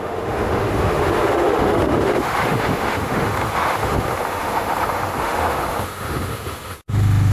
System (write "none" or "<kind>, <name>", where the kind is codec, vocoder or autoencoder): autoencoder, DAC-VAE